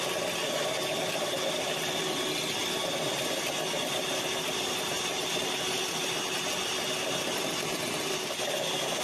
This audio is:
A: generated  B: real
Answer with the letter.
B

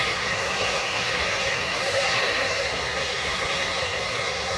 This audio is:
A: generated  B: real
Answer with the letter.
A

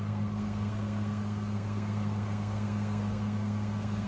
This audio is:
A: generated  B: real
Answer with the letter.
A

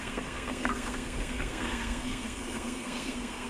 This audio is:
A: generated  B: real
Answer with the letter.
A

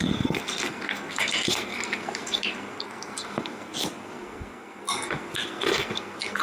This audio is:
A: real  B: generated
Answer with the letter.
B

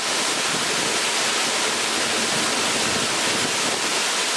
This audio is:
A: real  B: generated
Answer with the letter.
A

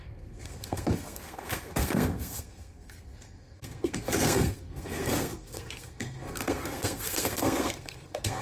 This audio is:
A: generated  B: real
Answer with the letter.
A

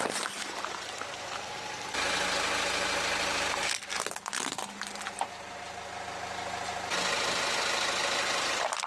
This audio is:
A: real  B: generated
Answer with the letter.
A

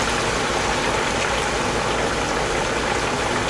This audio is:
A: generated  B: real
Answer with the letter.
B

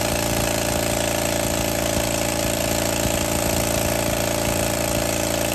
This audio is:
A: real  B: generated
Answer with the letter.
A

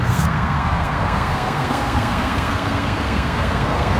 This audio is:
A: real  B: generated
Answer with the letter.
B